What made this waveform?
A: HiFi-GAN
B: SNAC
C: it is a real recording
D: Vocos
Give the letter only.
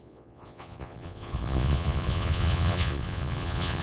D